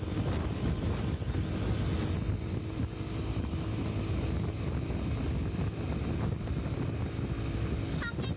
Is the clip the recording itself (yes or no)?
yes